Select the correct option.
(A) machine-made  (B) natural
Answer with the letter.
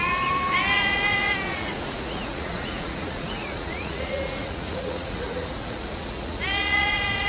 A